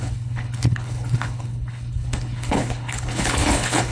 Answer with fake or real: fake